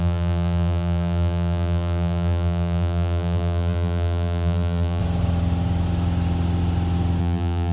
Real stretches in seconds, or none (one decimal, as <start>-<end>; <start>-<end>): 5.0-7.2